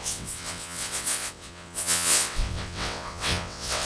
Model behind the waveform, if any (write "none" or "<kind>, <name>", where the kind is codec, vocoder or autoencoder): vocoder, WaveNeXt